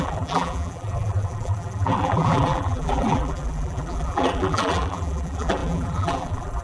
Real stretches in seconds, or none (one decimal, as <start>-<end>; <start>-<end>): none